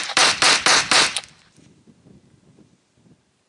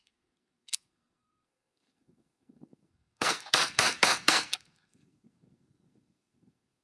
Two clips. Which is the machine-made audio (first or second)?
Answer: second